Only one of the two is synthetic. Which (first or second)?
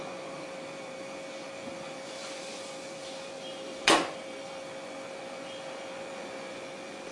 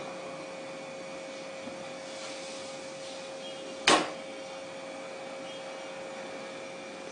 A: first